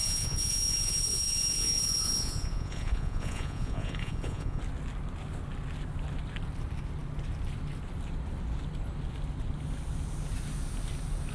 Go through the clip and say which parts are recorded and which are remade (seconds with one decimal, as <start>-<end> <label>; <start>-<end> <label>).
0.0-4.6 remade; 4.6-11.3 recorded